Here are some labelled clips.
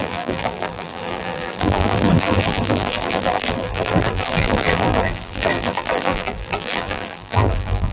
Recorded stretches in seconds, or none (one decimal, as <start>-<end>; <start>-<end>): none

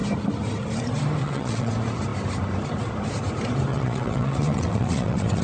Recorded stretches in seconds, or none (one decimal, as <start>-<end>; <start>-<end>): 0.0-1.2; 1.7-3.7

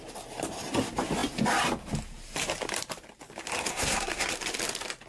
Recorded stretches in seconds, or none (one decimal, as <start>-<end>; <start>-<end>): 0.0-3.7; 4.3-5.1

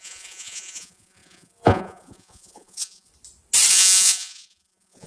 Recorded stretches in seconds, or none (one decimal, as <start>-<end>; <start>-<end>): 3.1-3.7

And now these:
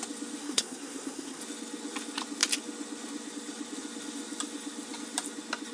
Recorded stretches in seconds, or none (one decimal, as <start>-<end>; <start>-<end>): 0.0-0.4; 1.4-5.7

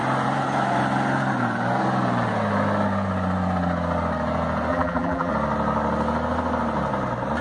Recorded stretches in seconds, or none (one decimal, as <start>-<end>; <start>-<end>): 0.0-4.7; 5.3-7.4

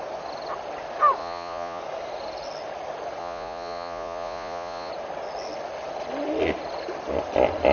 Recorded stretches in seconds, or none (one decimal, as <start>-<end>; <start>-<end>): 0.0-1.2; 1.8-3.2; 4.9-7.7